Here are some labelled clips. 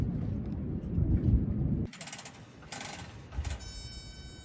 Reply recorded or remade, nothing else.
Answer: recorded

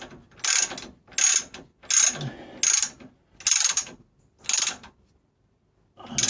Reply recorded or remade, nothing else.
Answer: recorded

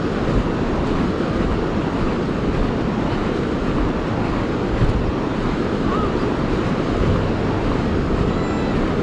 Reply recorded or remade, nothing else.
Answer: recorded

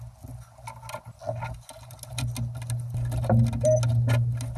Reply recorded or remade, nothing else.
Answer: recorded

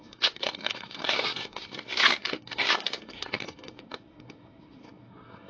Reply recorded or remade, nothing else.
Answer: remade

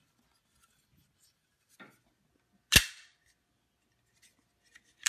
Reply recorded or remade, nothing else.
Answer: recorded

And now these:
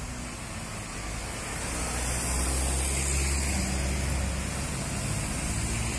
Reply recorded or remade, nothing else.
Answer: recorded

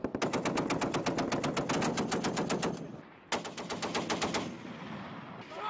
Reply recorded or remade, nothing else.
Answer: recorded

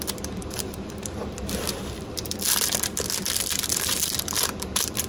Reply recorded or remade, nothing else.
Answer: remade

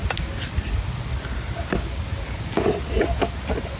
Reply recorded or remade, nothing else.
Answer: recorded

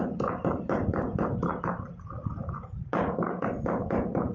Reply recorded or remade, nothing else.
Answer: remade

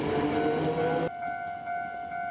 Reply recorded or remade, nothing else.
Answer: recorded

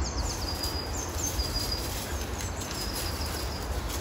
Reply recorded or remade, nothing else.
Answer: recorded